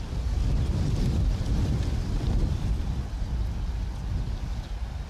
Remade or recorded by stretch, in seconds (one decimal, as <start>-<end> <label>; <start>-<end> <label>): 0.0-1.2 recorded; 1.2-2.9 remade; 2.9-5.1 recorded